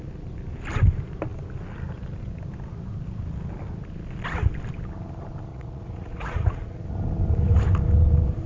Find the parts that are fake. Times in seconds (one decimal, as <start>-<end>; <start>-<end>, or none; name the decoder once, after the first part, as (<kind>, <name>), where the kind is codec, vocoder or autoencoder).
5.5-6.8 (vocoder, Vocos)